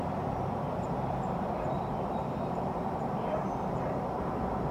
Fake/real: fake